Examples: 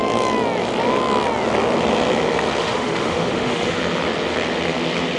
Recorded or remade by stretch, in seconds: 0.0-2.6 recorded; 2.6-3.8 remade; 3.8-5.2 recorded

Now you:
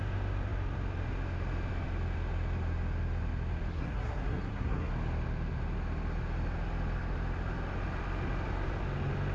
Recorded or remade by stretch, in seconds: 0.0-3.7 recorded; 3.7-4.9 remade; 4.9-9.3 recorded

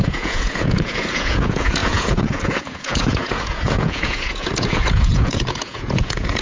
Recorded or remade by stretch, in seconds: 0.0-6.4 remade

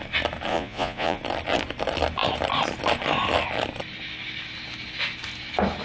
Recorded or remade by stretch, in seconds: 0.0-0.5 recorded; 0.5-1.2 remade; 1.2-5.8 recorded

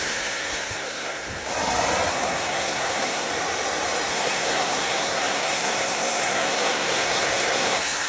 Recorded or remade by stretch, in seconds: 0.0-1.5 remade; 1.5-2.1 recorded; 2.1-3.3 remade; 3.3-4.1 recorded; 4.1-8.1 remade

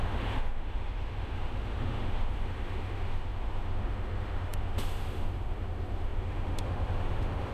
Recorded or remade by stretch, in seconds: 0.0-7.5 remade